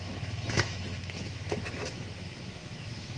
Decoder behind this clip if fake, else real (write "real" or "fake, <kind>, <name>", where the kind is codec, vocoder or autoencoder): fake, autoencoder, DAC-VAE